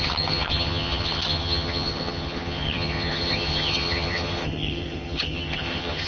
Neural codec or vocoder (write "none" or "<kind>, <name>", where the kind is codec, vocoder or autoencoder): vocoder, HiFi-GAN